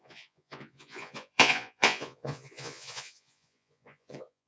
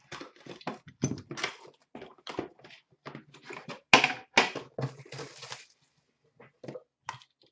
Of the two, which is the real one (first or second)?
second